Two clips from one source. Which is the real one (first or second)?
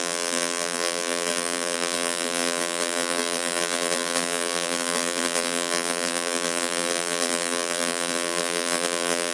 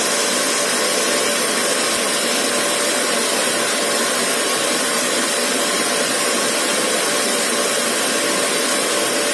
second